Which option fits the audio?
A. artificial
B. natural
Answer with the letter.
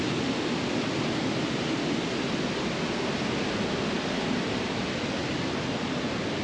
B